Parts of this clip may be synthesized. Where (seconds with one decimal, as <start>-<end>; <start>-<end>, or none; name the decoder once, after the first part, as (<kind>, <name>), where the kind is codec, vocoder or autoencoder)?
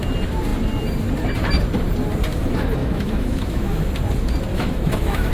2.8-3.9 (autoencoder, DAC-VAE); 4.5-5.3